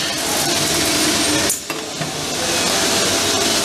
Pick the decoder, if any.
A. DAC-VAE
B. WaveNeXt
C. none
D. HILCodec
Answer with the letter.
C